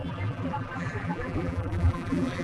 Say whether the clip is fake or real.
fake